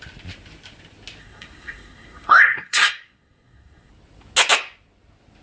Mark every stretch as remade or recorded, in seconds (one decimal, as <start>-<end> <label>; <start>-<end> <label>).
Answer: 0.0-1.2 recorded; 1.2-3.9 remade; 3.9-5.4 recorded